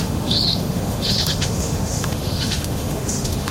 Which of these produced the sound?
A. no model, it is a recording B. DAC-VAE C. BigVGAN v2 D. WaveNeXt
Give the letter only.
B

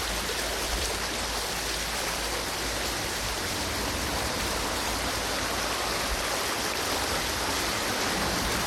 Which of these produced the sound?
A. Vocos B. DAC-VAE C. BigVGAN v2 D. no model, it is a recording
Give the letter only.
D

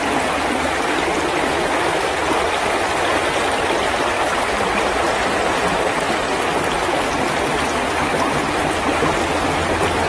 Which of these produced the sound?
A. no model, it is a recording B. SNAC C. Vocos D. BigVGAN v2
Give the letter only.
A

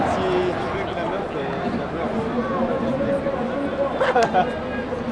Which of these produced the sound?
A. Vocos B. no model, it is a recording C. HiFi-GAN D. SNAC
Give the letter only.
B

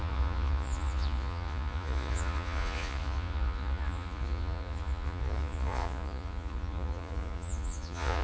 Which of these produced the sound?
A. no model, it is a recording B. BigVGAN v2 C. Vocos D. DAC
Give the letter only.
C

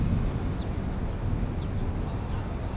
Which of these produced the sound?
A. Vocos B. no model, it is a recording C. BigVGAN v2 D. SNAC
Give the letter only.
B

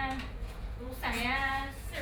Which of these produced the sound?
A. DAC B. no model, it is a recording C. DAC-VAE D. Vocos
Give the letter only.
D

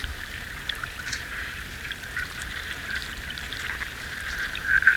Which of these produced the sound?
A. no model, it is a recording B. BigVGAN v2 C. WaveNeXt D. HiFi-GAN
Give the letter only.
B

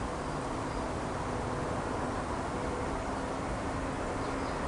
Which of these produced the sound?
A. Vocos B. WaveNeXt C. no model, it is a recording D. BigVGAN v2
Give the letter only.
C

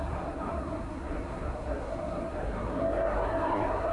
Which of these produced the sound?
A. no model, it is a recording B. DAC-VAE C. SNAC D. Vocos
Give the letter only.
C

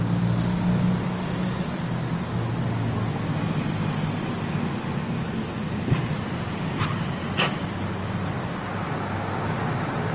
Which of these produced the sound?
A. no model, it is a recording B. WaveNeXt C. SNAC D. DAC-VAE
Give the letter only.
A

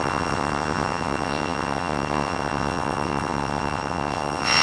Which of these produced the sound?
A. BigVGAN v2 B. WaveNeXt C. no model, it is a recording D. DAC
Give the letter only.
B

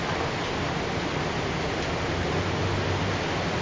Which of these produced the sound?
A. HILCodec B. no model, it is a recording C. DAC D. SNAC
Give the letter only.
B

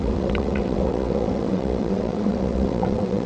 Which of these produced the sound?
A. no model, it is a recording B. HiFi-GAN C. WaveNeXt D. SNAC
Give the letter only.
C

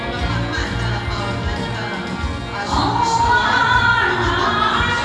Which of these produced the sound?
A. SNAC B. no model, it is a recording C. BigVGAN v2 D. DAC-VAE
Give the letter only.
B